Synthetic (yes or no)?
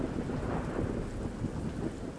no